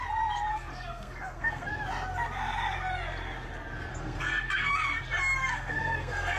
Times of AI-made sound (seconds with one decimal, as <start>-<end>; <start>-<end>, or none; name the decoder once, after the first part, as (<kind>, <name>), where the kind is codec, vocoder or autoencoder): 0.7-1.7 (codec, SNAC); 3.9-4.7; 5.4-6.4